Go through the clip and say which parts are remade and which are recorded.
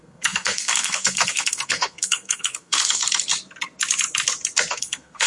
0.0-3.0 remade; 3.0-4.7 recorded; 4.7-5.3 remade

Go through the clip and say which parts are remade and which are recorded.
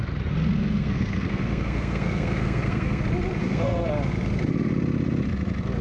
0.0-0.6 recorded; 0.6-3.0 remade; 3.0-3.4 recorded; 3.4-3.9 remade; 3.9-5.8 recorded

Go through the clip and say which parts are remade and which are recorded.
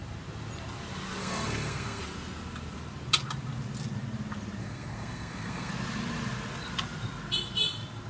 0.0-1.2 recorded; 1.2-2.0 remade; 2.0-4.6 recorded; 4.6-5.7 remade; 5.7-8.1 recorded